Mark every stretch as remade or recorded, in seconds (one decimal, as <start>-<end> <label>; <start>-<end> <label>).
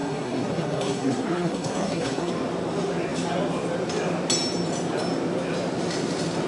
0.0-2.3 remade; 2.3-6.5 recorded